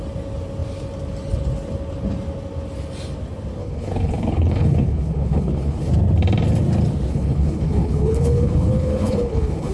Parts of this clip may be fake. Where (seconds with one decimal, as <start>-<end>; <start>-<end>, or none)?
3.6-5.9; 7.1-9.7